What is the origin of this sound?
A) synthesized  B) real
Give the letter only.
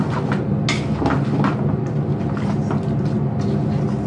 B